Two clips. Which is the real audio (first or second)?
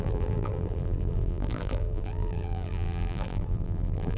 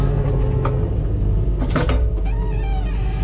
second